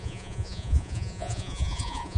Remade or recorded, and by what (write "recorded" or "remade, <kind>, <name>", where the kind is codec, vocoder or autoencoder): remade, vocoder, Vocos